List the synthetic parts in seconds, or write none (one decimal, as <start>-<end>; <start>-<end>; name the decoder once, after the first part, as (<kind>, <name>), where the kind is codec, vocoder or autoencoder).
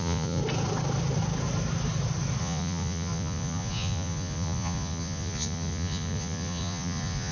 0.0-0.4 (vocoder, Vocos); 2.4-7.3